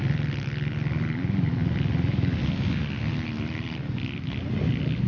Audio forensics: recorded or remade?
recorded